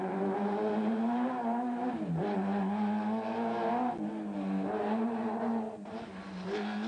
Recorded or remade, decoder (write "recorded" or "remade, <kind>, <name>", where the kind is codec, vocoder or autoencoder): recorded